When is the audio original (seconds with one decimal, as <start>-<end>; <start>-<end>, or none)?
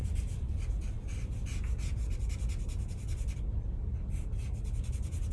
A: 0.0-5.3